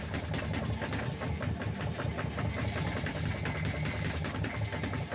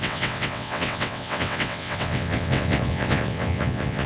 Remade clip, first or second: second